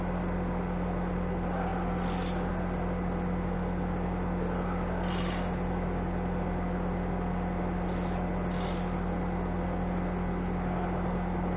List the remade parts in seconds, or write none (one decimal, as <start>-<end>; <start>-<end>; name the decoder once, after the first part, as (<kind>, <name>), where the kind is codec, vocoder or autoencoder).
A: none